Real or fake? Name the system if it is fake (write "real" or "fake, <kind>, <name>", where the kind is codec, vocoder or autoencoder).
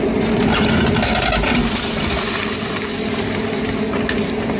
real